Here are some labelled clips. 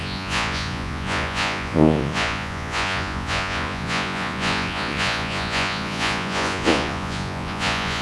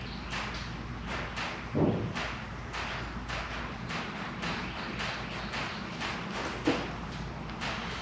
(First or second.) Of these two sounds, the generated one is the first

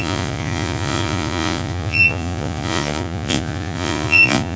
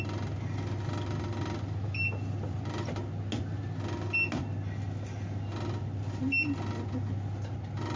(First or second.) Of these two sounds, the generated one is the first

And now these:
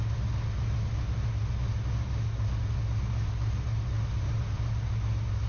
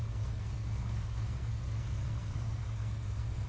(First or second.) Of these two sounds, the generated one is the second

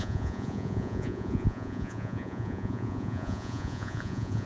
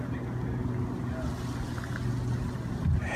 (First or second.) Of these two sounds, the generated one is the first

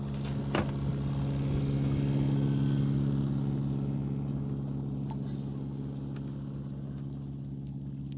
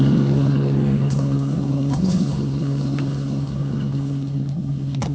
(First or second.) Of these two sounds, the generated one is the second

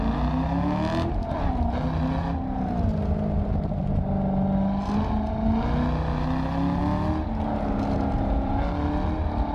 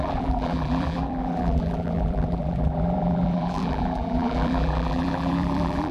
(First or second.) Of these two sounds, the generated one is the second